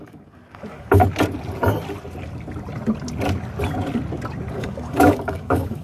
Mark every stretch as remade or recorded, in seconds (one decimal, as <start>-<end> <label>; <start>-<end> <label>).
0.0-1.0 remade; 1.0-4.5 recorded; 4.5-5.8 remade